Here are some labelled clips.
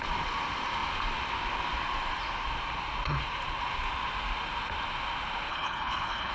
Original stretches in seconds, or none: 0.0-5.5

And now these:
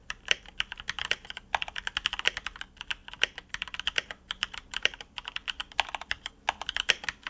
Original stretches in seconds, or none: 0.5-3.0; 6.3-7.3